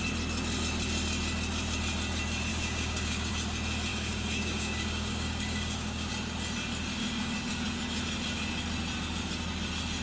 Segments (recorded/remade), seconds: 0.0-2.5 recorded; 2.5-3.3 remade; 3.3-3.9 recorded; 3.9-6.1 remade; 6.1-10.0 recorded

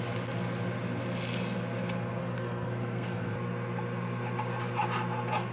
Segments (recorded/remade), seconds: 0.0-2.2 recorded; 2.2-3.3 remade; 3.3-5.5 recorded

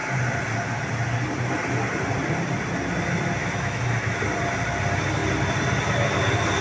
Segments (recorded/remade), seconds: 0.0-3.4 recorded; 3.4-4.2 remade; 4.2-6.6 recorded